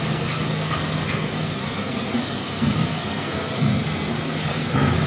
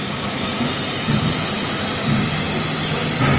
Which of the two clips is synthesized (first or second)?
first